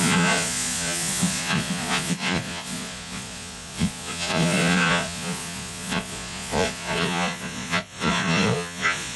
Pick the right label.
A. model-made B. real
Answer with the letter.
A